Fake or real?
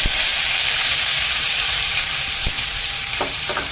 fake